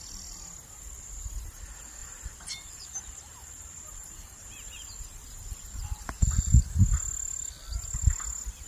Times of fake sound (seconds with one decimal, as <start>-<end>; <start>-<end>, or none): 2.0-6.7